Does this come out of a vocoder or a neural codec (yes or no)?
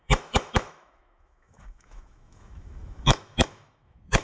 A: yes